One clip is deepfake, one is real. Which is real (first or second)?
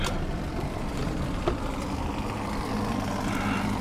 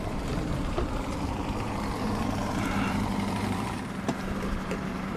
first